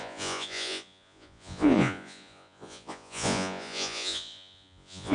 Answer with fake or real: fake